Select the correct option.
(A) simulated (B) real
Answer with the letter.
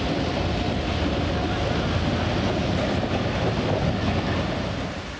B